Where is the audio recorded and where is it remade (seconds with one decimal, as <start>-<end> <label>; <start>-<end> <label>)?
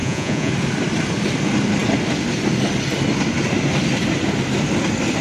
0.0-0.5 remade; 0.5-5.2 recorded